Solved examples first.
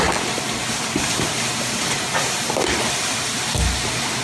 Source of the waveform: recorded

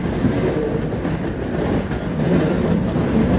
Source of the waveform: recorded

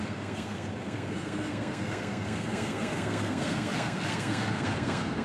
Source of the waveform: remade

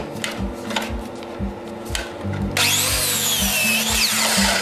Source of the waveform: recorded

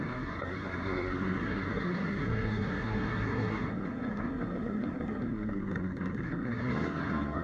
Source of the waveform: remade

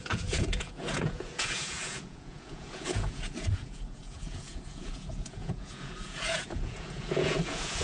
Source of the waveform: remade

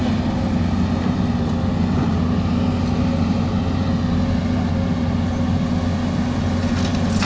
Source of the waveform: recorded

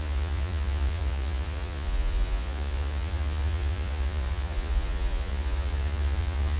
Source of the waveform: remade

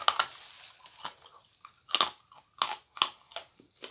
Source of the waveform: recorded